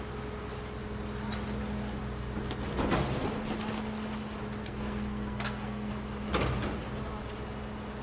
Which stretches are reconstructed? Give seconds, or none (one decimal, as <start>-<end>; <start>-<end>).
4.6-5.9